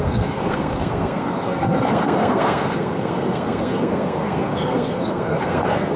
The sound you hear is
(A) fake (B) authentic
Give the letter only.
A